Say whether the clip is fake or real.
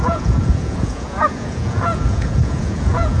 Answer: fake